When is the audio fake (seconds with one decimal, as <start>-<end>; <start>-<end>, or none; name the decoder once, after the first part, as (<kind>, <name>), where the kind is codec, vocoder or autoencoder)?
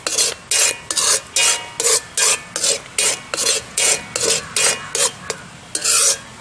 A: 3.4-4.0 (vocoder, Vocos)